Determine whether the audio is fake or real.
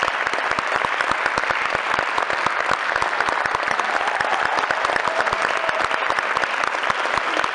real